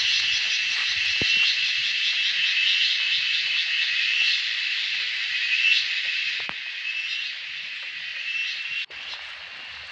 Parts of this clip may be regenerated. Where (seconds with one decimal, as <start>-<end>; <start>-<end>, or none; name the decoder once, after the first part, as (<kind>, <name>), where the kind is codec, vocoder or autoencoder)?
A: none